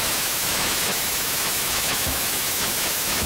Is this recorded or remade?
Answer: remade